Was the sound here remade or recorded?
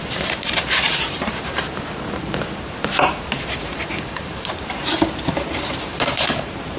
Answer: remade